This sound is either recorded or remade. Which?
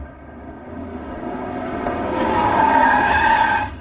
remade